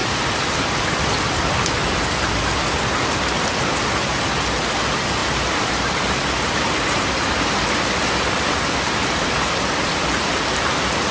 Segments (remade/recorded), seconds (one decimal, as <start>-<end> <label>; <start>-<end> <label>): 0.0-5.2 recorded; 5.2-7.3 remade; 7.3-11.1 recorded